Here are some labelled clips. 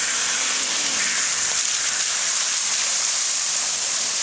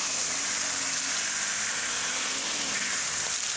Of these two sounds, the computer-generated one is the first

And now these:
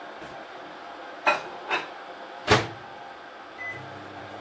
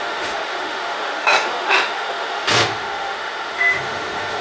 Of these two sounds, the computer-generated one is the second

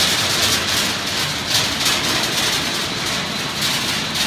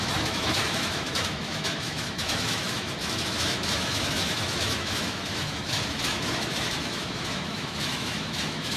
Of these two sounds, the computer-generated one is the second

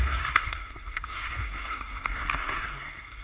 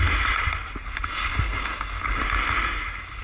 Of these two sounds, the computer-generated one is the first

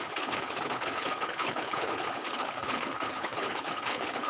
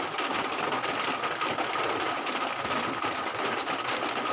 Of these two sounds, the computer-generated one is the first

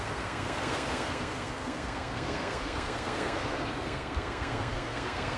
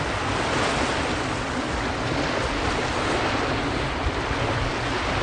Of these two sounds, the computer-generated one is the first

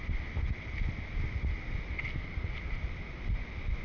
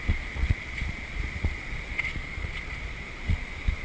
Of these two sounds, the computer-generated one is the second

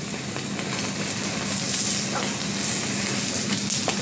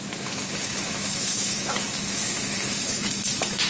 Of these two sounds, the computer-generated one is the second